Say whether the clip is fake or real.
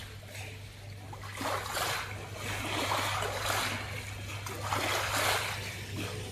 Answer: real